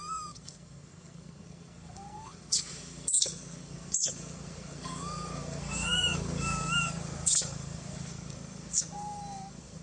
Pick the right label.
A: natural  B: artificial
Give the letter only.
B